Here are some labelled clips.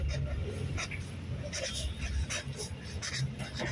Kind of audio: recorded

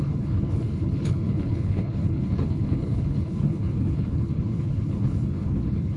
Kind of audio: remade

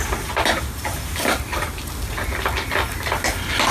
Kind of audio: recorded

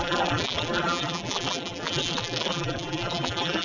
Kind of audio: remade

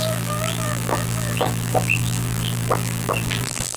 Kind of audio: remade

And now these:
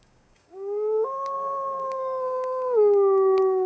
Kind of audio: remade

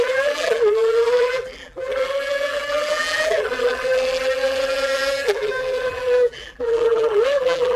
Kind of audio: remade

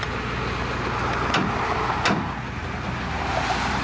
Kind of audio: recorded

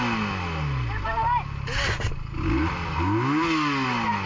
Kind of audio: recorded